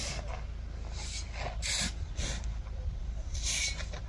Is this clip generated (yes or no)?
no